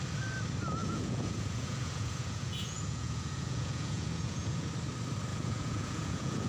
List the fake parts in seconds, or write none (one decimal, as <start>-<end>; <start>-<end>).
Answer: 0.8-4.7; 5.3-6.5